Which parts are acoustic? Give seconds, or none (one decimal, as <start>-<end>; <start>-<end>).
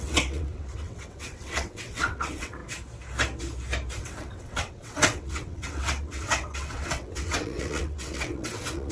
2.6-4.0